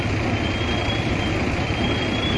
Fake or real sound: fake